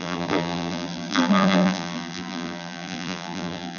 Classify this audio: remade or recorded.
remade